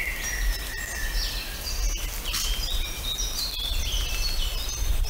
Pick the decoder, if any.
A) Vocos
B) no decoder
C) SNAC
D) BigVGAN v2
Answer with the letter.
B